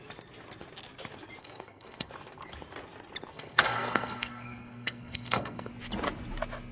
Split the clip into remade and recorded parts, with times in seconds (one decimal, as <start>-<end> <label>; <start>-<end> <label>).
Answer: 0.0-1.4 recorded; 1.4-2.1 remade; 2.1-3.3 recorded; 3.3-5.7 remade; 5.7-6.7 recorded